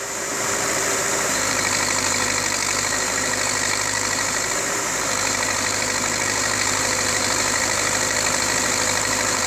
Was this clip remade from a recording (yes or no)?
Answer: yes